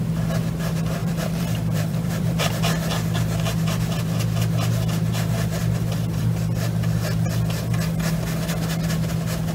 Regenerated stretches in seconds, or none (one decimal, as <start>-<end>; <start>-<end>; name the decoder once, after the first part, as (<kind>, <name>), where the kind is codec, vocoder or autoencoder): 1.0-2.5 (vocoder, BigVGAN v2)